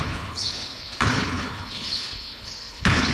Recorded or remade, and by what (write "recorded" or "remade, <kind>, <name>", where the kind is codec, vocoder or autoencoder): remade, codec, HILCodec